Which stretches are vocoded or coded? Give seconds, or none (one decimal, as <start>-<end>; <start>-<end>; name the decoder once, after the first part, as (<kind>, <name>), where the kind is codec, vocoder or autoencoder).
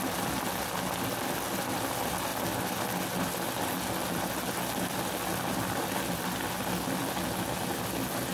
none